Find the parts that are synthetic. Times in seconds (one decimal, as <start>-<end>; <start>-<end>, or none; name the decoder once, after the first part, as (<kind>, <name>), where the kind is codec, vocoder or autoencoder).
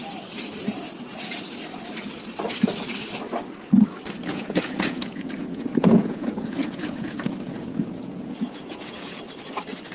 4.3-9.2 (vocoder, Vocos)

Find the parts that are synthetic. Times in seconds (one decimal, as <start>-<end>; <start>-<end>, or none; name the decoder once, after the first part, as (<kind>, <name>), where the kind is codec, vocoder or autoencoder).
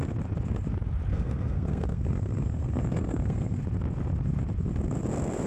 1.1-3.6 (codec, SNAC)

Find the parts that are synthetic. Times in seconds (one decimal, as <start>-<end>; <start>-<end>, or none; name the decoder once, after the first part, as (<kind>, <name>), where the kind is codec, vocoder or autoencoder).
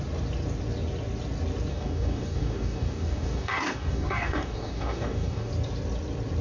1.7-5.5 (codec, DAC)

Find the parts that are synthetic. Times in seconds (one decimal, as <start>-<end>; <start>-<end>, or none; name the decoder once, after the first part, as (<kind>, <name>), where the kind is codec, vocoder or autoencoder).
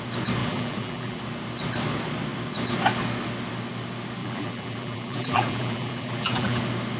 0.4-1.2 (vocoder, BigVGAN v2); 4.2-6.6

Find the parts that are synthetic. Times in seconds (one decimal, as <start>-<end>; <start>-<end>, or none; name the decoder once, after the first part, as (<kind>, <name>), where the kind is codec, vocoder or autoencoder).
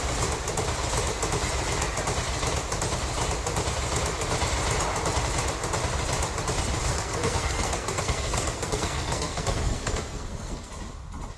6.8-10.7 (codec, SNAC)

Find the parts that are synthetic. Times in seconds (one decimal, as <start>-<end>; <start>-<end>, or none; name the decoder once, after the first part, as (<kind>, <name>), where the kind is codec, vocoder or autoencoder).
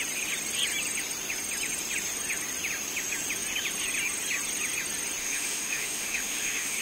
5.2-6.8 (autoencoder, DAC-VAE)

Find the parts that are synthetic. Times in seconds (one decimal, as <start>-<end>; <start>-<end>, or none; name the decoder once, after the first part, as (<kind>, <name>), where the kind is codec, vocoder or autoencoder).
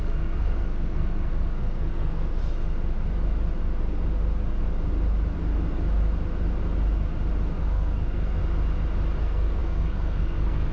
0.0-2.4 (codec, SNAC); 7.6-8.4; 9.2-10.7